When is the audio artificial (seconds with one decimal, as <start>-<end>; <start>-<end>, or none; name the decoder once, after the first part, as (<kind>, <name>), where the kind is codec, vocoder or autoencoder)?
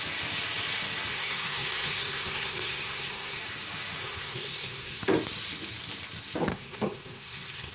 1.1-3.4 (codec, SNAC); 4.0-5.0; 6.5-7.7